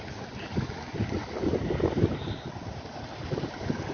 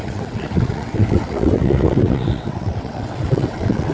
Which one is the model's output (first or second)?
second